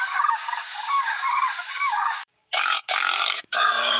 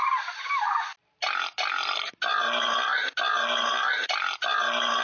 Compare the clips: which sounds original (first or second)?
second